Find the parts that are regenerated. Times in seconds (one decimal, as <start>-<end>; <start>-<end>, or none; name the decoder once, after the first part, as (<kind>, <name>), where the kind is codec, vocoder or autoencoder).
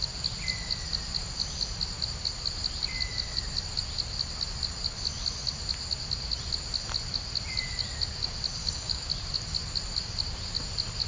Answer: 8.6-9.1 (codec, DAC)